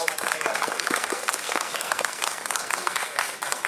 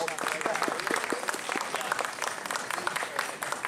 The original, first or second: second